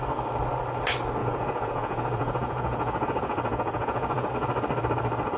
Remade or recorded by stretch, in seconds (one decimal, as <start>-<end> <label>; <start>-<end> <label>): 0.0-1.2 recorded; 1.2-4.3 remade; 4.3-5.4 recorded

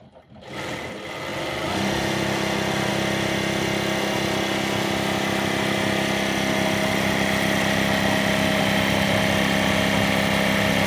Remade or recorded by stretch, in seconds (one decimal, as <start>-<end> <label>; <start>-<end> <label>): 0.0-10.9 recorded

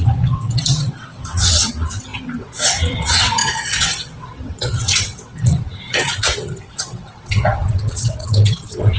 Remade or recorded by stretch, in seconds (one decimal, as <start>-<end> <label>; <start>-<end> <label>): 0.0-9.0 remade

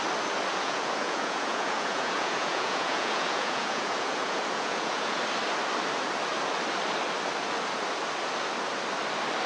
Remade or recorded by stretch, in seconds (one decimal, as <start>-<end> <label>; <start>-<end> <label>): 0.0-0.5 recorded; 0.5-5.2 remade; 5.2-9.5 recorded

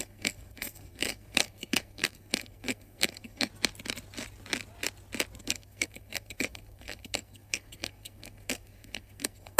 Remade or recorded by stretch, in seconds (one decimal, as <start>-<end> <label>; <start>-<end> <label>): 0.0-3.5 remade; 3.5-5.4 recorded; 5.4-9.6 remade